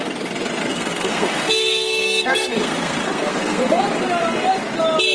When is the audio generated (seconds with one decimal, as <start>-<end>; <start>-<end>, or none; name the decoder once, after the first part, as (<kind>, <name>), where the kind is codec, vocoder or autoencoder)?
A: 0.7-3.8 (codec, SNAC)